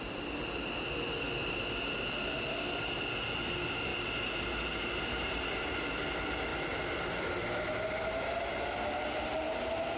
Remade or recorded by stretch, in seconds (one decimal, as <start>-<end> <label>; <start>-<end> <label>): 0.0-10.0 recorded